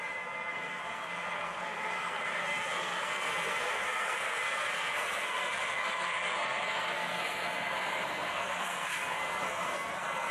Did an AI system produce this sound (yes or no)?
yes